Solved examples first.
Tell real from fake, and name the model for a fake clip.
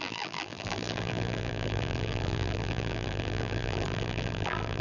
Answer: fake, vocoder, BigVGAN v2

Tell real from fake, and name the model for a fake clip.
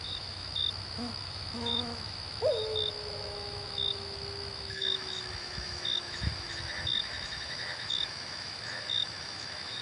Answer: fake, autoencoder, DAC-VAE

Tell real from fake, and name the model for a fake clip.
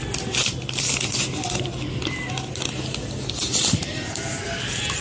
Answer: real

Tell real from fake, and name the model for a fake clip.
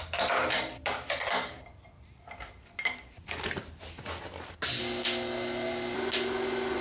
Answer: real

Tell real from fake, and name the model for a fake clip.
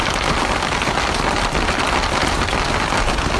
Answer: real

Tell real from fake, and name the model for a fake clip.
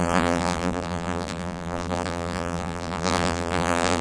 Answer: fake, vocoder, BigVGAN v2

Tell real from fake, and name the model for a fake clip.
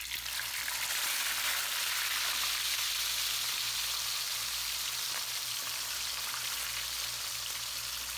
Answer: real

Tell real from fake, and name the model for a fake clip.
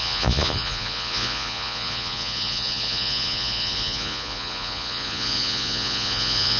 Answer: fake, vocoder, Vocos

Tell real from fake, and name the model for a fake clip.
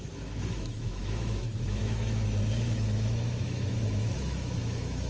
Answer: fake, autoencoder, DAC-VAE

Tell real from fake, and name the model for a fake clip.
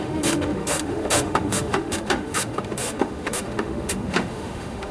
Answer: fake, autoencoder, DAC-VAE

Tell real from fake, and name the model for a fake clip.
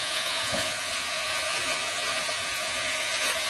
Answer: fake, vocoder, Vocos